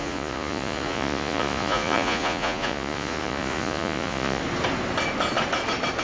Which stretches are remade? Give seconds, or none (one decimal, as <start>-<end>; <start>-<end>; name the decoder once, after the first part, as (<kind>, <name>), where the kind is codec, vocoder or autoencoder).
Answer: 0.0-4.4 (vocoder, Vocos)